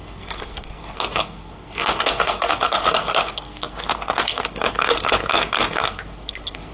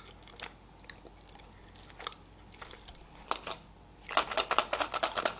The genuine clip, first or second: second